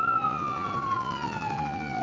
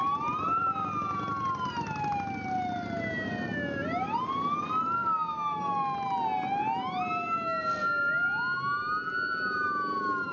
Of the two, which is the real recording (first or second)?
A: second